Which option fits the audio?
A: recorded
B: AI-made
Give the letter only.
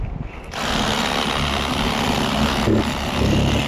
A